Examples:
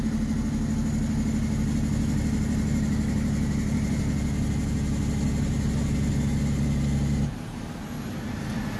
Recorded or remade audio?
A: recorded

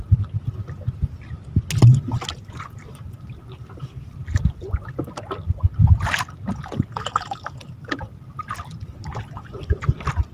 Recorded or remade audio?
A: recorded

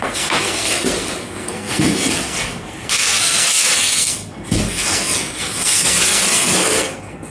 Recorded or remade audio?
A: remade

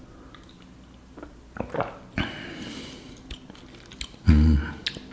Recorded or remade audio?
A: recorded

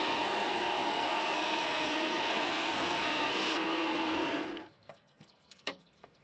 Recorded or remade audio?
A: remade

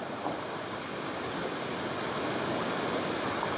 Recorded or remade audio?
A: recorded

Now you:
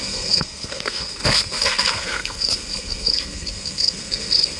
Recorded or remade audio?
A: remade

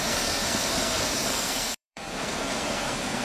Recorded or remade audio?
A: remade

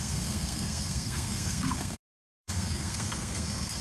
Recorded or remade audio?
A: remade